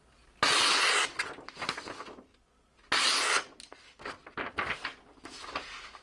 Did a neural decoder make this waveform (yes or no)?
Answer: no